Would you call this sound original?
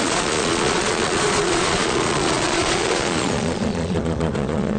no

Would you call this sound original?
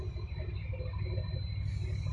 yes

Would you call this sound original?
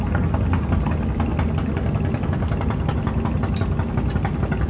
yes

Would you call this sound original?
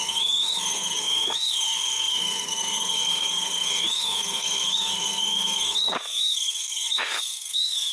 no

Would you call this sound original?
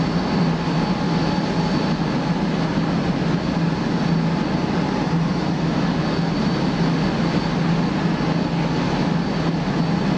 yes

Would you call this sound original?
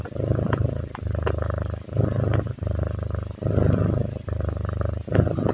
yes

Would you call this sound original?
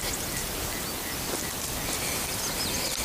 yes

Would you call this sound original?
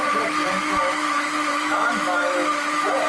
no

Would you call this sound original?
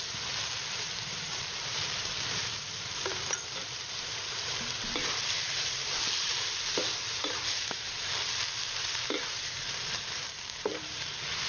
no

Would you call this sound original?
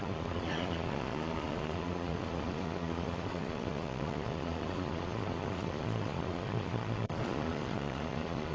no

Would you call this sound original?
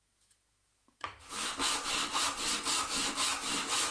no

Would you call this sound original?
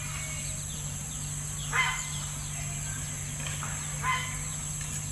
yes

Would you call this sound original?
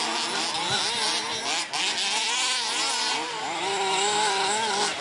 yes